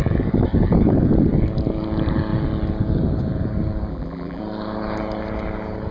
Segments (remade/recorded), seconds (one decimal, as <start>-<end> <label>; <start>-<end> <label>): 0.0-3.9 recorded; 3.9-4.4 remade; 4.4-5.9 recorded